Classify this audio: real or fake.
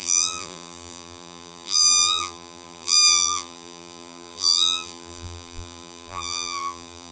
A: fake